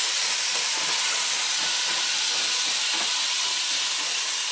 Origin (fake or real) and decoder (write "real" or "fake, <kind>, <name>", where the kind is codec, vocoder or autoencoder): real